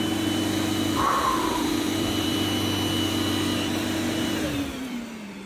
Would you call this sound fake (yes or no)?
yes